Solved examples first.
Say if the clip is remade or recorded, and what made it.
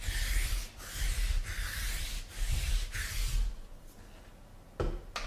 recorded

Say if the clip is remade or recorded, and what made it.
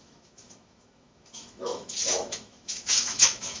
remade, autoencoder, DAC-VAE